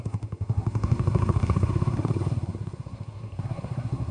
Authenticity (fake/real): fake